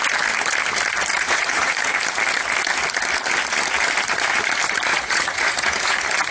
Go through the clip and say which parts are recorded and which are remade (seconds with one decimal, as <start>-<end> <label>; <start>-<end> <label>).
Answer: 0.0-1.1 recorded; 1.1-1.9 remade; 1.9-4.9 recorded; 4.9-6.3 remade